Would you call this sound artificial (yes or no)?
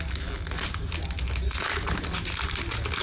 no